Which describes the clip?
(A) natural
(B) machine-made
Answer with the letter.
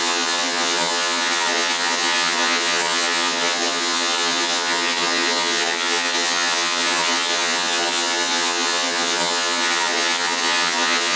B